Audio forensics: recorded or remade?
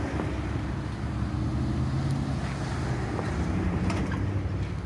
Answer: recorded